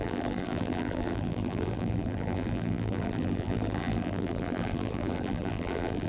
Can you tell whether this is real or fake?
fake